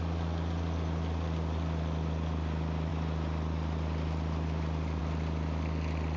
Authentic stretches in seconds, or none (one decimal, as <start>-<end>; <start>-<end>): 0.0-6.2